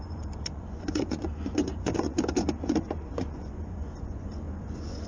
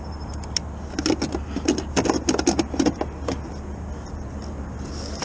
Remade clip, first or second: first